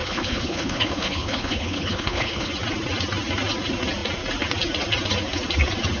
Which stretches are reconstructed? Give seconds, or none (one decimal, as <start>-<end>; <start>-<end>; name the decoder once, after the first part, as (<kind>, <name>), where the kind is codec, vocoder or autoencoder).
0.0-2.5 (codec, HILCodec)